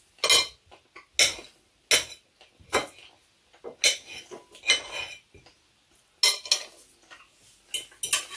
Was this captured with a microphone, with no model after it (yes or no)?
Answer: yes